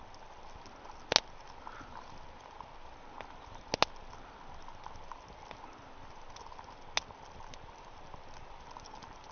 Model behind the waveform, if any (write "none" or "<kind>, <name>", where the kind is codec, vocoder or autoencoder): none